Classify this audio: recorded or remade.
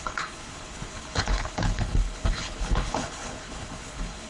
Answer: remade